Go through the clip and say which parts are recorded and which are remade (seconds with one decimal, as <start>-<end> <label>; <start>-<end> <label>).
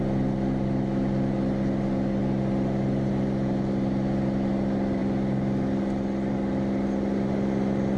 0.0-8.0 recorded